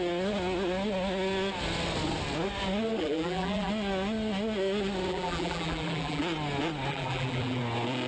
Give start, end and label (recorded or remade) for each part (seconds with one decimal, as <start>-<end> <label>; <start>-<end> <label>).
0.0-3.0 recorded; 3.0-3.7 remade; 3.7-5.1 recorded; 5.1-6.2 remade; 6.2-6.9 recorded; 6.9-7.6 remade; 7.6-8.1 recorded